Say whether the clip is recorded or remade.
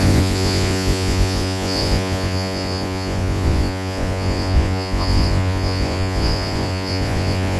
remade